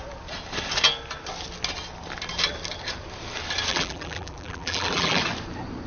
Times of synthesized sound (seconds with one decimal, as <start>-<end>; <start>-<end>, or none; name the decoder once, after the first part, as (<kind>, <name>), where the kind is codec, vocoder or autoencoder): 3.7-5.2 (vocoder, BigVGAN v2)